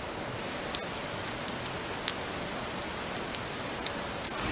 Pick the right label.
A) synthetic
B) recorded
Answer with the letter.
B